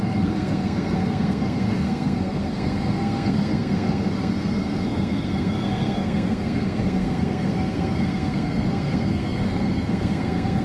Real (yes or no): no